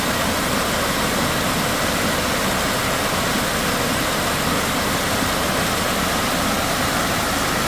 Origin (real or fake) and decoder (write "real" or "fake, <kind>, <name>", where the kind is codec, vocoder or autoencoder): real